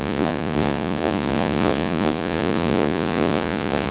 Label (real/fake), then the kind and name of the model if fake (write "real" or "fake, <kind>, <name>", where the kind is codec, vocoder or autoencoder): fake, vocoder, Vocos